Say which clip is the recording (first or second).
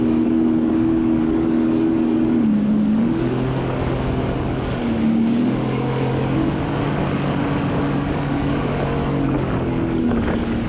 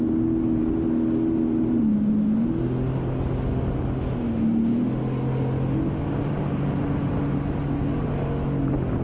second